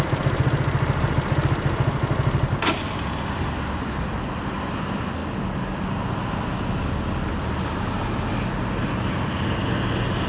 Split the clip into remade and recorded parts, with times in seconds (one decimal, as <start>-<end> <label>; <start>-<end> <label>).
0.0-10.3 recorded

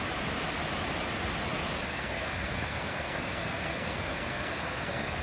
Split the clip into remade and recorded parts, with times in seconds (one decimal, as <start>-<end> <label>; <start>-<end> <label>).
0.0-1.9 recorded; 1.9-5.2 remade

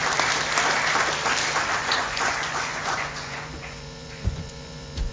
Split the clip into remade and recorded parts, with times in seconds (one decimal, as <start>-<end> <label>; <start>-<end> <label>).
0.0-1.8 recorded; 1.8-5.1 remade

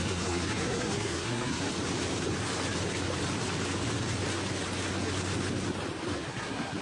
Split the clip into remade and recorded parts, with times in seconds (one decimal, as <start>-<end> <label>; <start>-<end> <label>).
0.0-1.7 remade; 1.7-6.1 recorded; 6.1-6.8 remade